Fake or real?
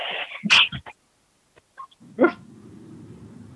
real